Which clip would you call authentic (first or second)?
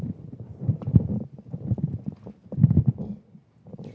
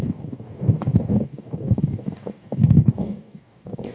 first